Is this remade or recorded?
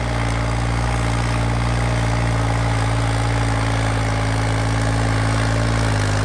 recorded